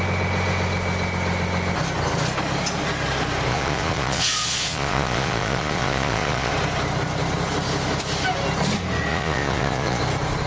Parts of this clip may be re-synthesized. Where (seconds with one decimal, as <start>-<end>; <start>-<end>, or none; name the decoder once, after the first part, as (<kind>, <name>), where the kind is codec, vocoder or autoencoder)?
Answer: 3.5-6.5 (vocoder, Vocos); 9.1-10.0